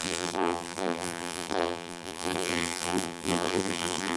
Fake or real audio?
fake